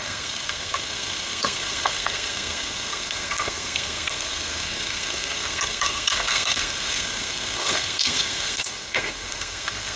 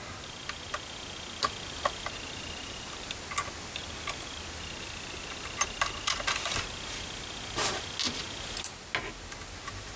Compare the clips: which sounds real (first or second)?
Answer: second